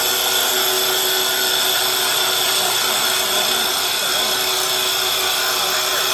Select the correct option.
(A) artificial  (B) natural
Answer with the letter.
B